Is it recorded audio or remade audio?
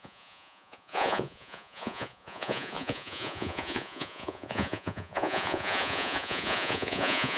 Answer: remade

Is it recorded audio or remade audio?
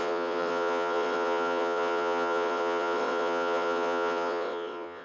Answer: remade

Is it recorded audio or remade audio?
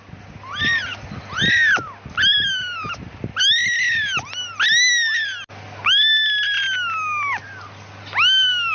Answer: recorded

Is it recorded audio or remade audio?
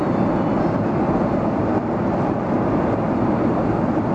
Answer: recorded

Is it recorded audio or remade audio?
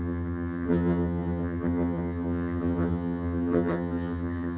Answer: remade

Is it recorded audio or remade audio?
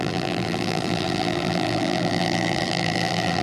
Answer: remade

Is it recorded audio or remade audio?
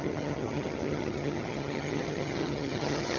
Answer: remade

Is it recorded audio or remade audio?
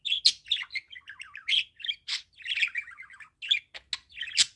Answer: recorded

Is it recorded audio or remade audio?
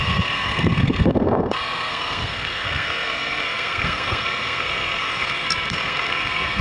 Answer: remade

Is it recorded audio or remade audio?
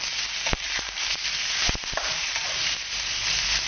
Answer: recorded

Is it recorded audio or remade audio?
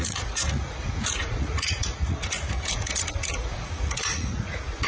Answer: remade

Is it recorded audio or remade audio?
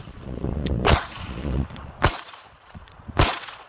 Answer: remade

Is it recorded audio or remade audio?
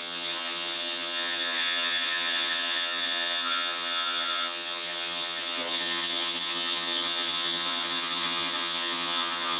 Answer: remade